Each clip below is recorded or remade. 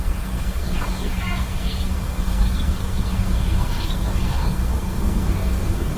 remade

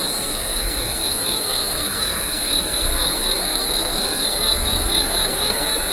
remade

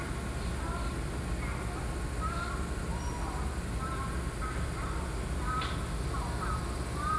recorded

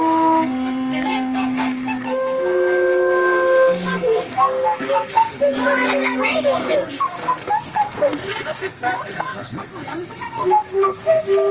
remade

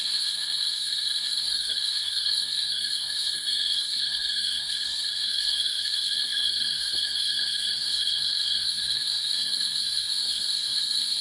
remade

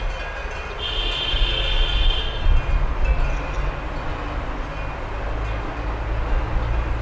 recorded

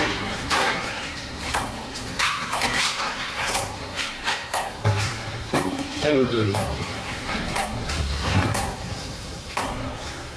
remade